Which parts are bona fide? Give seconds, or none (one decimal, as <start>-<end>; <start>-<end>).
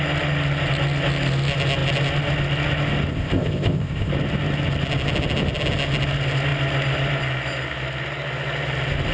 0.0-3.1; 4.1-9.1